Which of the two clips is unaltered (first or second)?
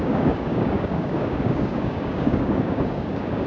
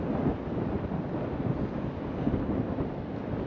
second